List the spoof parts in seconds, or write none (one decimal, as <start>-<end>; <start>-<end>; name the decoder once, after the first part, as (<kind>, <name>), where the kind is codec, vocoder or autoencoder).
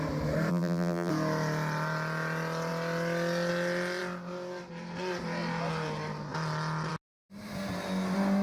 0.5-1.1 (vocoder, BigVGAN v2)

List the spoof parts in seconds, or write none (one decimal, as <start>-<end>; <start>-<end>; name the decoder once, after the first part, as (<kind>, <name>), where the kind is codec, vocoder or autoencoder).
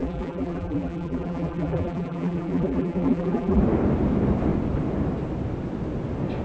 0.0-3.6 (vocoder, BigVGAN v2)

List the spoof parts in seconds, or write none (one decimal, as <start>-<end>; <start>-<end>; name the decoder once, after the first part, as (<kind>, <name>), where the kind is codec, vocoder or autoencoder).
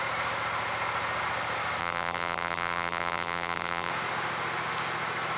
1.8-3.9 (vocoder, BigVGAN v2)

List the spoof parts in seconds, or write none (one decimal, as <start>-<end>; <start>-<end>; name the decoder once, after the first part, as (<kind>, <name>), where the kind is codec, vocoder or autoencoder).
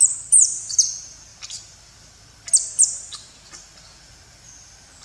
none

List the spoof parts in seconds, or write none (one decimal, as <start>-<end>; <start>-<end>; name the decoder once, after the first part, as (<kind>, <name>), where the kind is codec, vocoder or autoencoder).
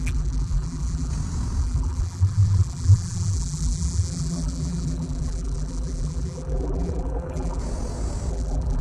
0.0-1.1 (vocoder, BigVGAN v2); 1.6-7.6; 8.3-8.8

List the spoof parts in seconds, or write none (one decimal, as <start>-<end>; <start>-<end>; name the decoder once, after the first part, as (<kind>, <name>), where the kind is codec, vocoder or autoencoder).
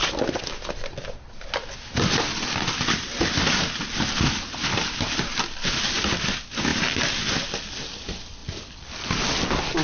8.4-8.9 (vocoder, BigVGAN v2)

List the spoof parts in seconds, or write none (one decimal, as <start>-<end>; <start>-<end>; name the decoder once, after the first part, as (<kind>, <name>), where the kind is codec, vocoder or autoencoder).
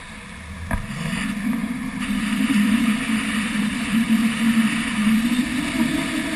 1.6-5.4 (vocoder, BigVGAN v2)